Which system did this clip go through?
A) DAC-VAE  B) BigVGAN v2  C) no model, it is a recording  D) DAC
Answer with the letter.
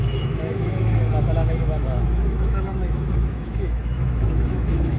A